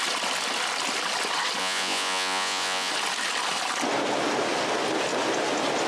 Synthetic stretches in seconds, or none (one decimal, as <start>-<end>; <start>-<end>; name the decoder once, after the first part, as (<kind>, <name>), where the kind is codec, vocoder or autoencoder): 1.6-2.9 (vocoder, Vocos)